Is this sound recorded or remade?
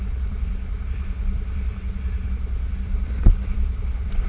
remade